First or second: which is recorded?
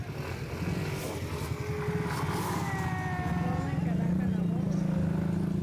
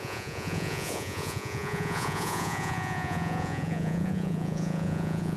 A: first